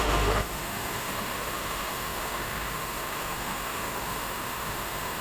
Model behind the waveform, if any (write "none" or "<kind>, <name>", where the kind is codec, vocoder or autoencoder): autoencoder, DAC-VAE